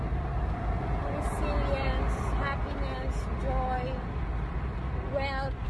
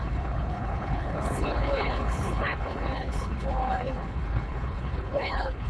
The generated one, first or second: second